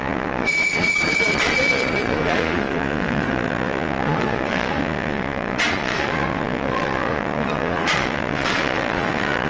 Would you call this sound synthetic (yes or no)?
yes